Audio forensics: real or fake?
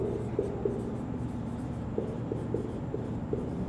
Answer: real